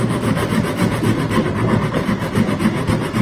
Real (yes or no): yes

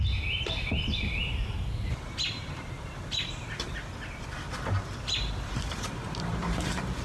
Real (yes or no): no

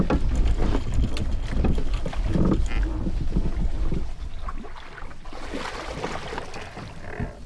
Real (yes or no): yes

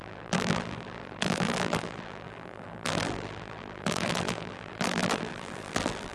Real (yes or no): no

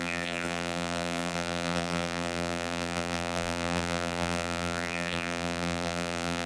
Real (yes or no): no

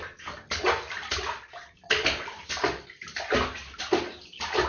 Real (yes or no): yes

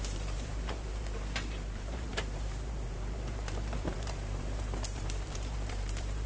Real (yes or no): no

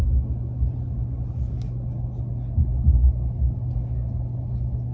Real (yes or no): yes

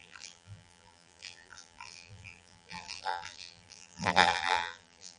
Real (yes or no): no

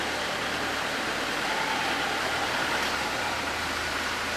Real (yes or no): yes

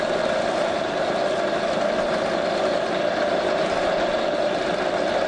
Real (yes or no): yes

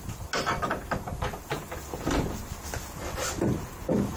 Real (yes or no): yes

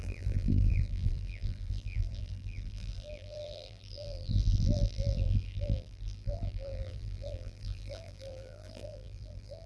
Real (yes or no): no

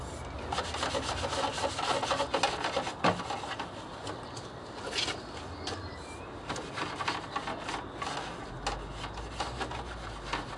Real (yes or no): yes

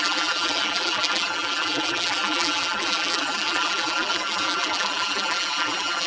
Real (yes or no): no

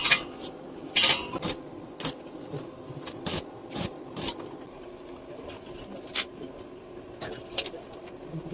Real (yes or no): yes